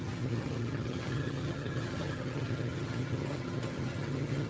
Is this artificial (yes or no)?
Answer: yes